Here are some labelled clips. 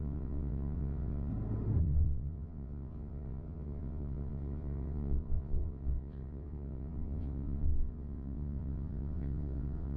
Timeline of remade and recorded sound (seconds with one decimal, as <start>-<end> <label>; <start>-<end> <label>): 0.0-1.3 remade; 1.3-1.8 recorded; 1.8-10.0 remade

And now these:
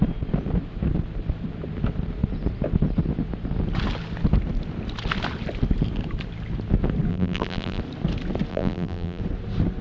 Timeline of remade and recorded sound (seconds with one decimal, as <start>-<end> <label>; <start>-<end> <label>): 0.0-7.1 recorded; 7.1-7.8 remade; 7.8-8.5 recorded; 8.5-9.2 remade; 9.2-9.8 recorded

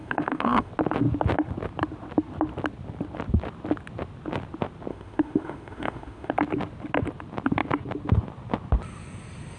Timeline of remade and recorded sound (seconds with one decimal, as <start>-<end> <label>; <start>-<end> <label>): 0.0-0.7 remade; 0.7-4.9 recorded; 4.9-6.3 remade; 6.3-9.6 recorded